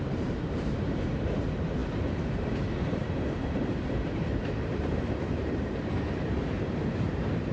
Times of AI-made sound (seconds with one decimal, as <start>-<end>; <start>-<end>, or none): 0.0-7.5